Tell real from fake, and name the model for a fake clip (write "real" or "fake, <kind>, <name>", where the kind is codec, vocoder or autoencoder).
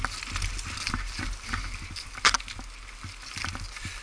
real